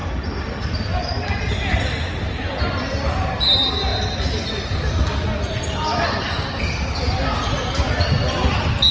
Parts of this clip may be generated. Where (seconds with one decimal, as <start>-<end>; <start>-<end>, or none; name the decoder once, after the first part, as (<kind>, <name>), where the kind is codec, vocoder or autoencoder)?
0.0-2.9 (vocoder, BigVGAN v2)